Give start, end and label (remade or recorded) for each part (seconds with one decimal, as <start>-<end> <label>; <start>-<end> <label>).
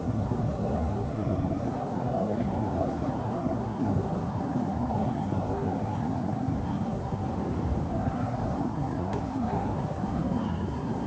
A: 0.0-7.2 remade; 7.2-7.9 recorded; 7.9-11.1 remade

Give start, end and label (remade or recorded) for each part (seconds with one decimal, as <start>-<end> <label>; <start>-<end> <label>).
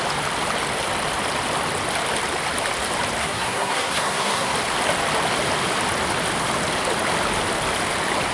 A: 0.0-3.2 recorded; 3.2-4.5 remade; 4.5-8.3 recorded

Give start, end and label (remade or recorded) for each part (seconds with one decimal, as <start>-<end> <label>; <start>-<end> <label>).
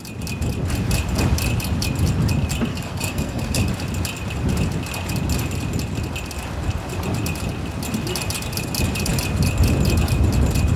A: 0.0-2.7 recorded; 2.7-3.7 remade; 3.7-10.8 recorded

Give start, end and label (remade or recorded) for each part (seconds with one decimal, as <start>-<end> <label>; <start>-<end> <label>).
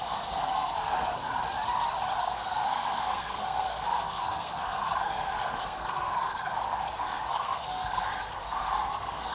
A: 0.0-1.3 remade; 1.3-2.2 recorded; 2.2-9.3 remade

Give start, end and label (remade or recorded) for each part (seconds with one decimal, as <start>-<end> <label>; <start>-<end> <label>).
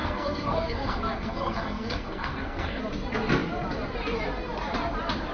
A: 0.0-2.8 remade; 2.8-5.3 recorded